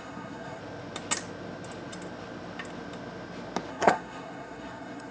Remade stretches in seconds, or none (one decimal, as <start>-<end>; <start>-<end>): 0.0-0.6; 3.7-5.1